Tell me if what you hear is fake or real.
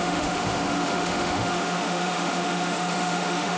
fake